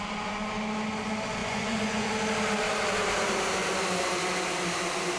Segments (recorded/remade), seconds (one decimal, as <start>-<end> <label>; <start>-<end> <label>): 0.0-1.4 recorded; 1.4-2.1 remade; 2.1-5.2 recorded